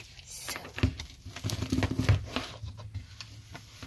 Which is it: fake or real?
real